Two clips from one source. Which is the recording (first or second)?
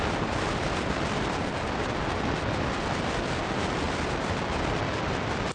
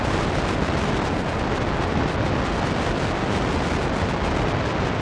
second